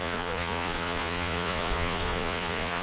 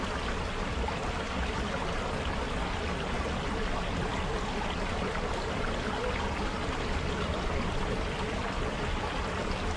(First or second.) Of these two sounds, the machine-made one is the first